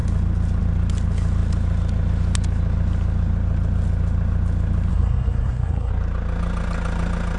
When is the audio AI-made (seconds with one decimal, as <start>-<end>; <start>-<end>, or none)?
4.9-5.9